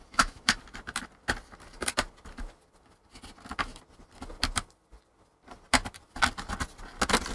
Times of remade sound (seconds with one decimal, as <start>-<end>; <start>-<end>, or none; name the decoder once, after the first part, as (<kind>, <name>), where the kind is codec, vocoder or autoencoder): 0.0-0.6 (autoencoder, DAC-VAE)